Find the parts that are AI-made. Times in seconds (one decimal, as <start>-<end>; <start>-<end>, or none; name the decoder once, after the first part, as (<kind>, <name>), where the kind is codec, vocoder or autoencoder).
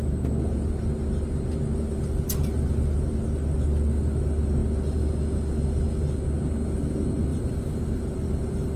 7.3-8.8 (vocoder, BigVGAN v2)